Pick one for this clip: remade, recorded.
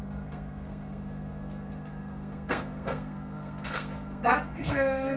remade